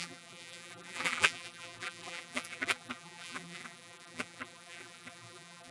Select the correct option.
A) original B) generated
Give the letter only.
B